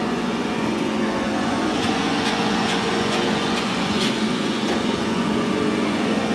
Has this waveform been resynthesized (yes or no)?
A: yes